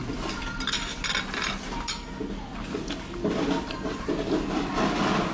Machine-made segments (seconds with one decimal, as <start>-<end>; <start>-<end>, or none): none